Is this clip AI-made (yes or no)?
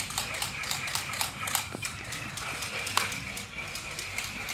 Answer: yes